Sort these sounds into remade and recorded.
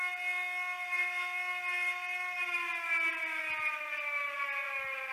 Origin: recorded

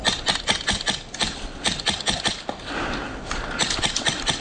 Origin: recorded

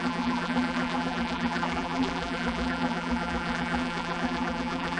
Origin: remade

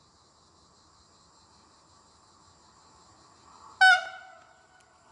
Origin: recorded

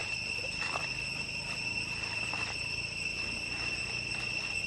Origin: recorded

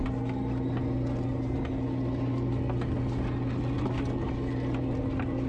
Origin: recorded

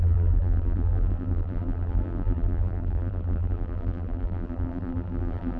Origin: remade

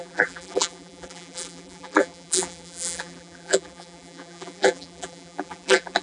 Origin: remade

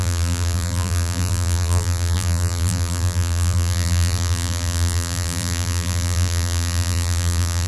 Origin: remade